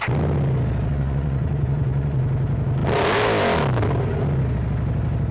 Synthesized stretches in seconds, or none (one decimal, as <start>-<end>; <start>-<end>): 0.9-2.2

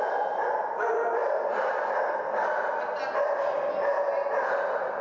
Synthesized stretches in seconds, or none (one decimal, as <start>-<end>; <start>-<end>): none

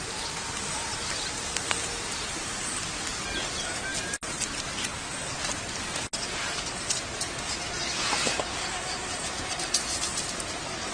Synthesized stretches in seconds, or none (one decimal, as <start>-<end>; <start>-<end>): none

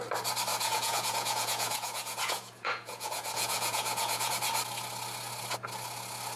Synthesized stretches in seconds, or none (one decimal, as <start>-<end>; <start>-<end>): 0.5-4.3